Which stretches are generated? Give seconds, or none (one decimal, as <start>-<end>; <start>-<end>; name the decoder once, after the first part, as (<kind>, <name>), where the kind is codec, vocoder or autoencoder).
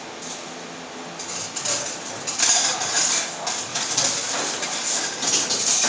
3.7-4.2 (vocoder, BigVGAN v2)